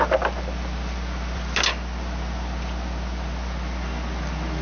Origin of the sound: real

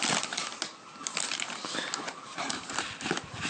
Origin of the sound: fake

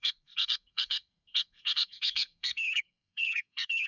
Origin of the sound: fake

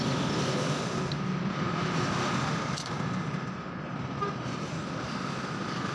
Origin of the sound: fake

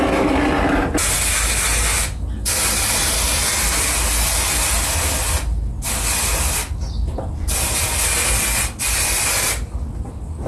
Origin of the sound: real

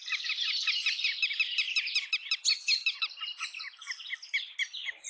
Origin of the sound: real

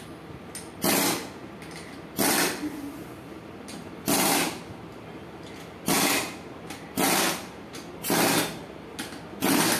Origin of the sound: real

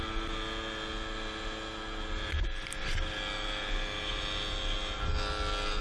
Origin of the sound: real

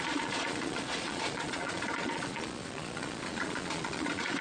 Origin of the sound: fake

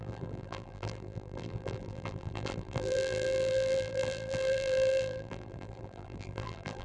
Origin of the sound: fake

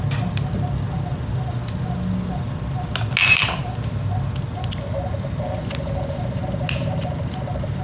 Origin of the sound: real